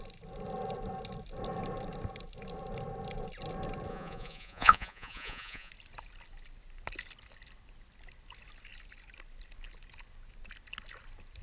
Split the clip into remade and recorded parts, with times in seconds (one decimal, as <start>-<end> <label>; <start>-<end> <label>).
0.0-3.9 recorded; 3.9-5.7 remade; 5.7-11.4 recorded